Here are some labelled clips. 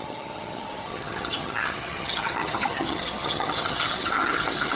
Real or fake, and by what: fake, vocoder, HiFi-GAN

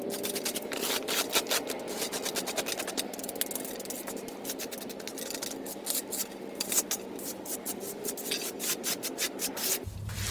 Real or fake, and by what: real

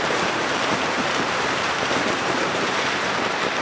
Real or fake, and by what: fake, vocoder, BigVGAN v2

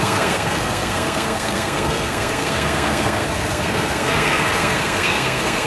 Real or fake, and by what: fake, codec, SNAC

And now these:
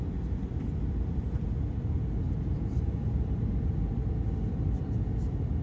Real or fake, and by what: real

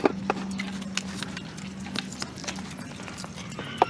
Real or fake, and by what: real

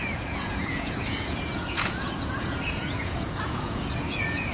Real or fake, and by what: fake, vocoder, Vocos